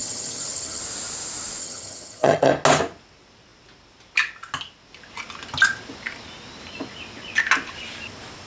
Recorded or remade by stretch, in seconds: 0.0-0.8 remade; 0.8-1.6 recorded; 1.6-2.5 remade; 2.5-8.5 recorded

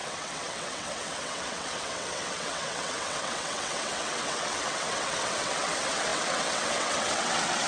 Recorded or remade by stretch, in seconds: 0.0-7.7 remade

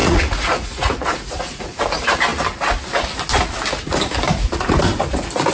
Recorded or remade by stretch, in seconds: 0.0-1.8 remade; 1.8-5.5 recorded

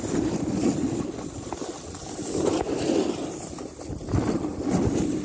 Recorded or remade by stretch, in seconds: 0.0-5.2 recorded

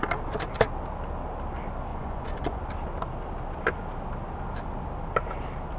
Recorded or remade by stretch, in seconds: 0.0-1.9 recorded; 1.9-2.6 remade; 2.6-5.8 recorded

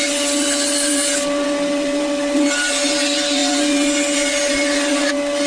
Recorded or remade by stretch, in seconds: 0.0-5.5 recorded